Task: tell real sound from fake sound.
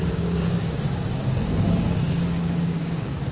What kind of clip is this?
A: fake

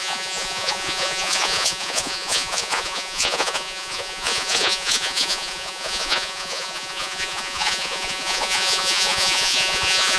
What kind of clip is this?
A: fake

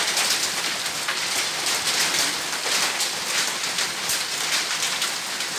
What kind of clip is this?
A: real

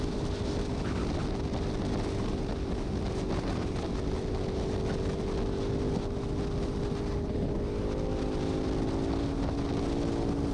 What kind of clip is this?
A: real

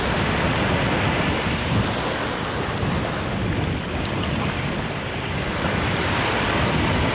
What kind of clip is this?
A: real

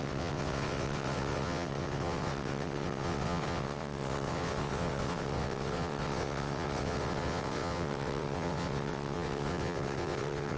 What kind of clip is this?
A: fake